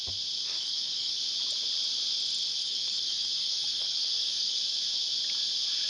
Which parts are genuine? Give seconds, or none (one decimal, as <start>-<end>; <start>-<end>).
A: 0.0-0.4; 1.2-2.5; 4.6-5.9